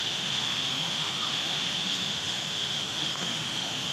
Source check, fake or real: fake